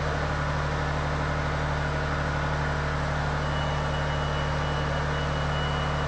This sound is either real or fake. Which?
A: real